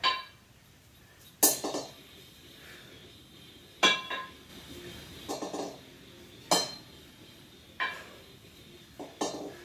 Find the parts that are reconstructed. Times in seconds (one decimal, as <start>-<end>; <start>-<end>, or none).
none